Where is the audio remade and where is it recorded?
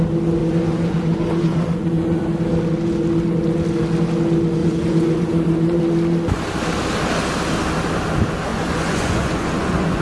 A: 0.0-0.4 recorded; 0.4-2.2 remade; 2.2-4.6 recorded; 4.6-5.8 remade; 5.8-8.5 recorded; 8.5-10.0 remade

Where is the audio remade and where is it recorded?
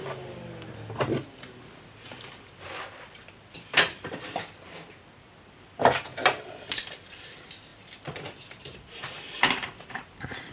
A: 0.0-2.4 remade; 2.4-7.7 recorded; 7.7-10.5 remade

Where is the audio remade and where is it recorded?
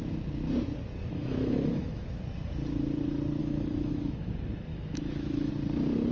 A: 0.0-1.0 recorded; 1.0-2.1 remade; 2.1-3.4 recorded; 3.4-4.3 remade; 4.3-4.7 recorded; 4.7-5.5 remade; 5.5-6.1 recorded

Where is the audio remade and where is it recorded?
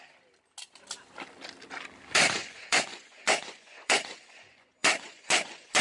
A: 0.0-2.4 recorded; 2.4-5.8 remade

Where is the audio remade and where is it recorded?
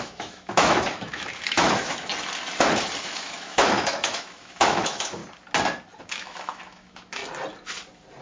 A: 0.0-2.1 remade; 2.1-3.0 recorded; 3.0-5.2 remade; 5.2-6.0 recorded; 6.0-7.2 remade; 7.2-8.2 recorded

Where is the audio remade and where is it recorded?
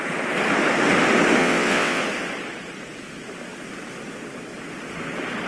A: 0.0-1.4 recorded; 1.4-2.0 remade; 2.0-5.5 recorded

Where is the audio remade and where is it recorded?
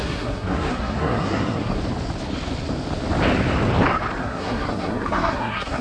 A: 0.0-1.8 remade; 1.8-4.2 recorded; 4.2-5.8 remade